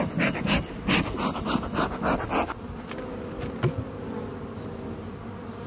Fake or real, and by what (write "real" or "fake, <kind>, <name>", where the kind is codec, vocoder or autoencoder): real